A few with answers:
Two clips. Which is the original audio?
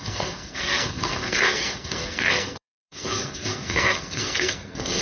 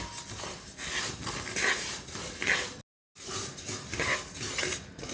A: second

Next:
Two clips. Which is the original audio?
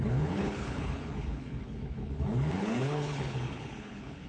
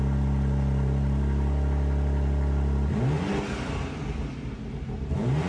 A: second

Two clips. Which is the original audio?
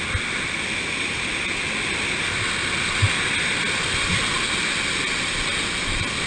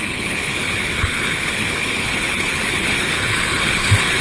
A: first